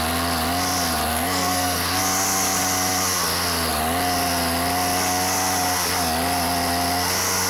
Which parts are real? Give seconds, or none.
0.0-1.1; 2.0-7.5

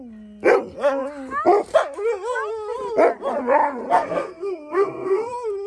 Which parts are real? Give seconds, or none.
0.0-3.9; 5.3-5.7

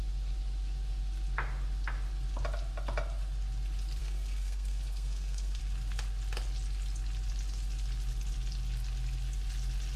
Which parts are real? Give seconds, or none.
0.0-4.0; 5.6-10.0

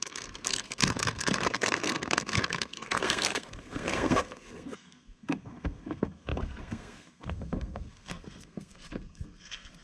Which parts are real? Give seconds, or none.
none

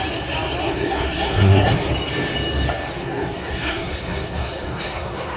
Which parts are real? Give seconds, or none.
0.0-0.6; 1.9-2.9